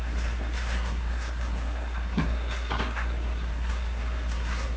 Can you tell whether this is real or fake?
fake